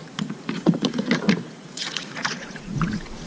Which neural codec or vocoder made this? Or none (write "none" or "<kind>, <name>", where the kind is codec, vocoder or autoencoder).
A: vocoder, Vocos